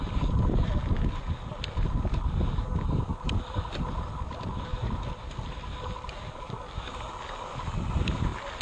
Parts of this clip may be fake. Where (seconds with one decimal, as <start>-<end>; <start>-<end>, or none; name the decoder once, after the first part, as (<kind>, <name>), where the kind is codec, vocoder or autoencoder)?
none